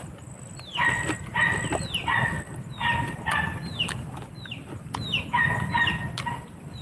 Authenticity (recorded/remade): recorded